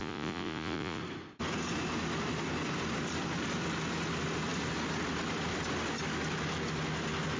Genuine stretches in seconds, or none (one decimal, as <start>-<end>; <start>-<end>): 1.0-7.4